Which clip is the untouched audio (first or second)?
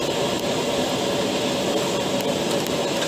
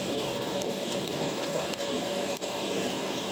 first